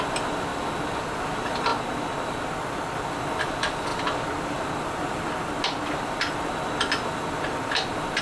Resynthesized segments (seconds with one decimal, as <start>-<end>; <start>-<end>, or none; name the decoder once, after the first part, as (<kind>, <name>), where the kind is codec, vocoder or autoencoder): none